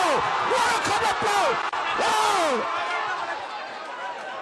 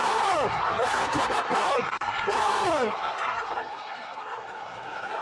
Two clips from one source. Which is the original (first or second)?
first